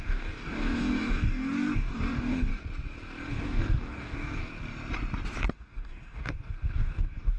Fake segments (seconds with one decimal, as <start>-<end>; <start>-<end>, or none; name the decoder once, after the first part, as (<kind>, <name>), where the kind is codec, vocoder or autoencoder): 0.0-2.5 (codec, DAC); 3.3-4.4; 5.5-7.4